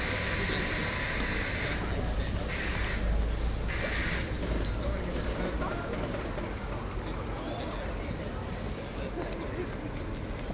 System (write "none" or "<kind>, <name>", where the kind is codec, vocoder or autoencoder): none